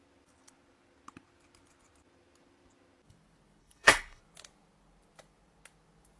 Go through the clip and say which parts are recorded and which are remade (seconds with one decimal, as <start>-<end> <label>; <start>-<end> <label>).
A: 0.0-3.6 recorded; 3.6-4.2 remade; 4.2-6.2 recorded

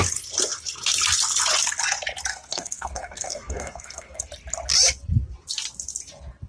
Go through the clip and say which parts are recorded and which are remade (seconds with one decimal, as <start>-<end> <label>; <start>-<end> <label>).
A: 0.0-2.3 recorded; 2.3-4.2 remade; 4.2-6.5 recorded

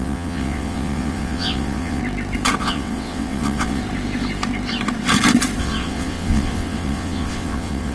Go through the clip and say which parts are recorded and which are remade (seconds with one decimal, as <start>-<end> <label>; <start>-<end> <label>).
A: 0.0-2.0 remade; 2.0-2.6 recorded; 2.6-3.8 remade; 3.8-5.6 recorded; 5.6-7.9 remade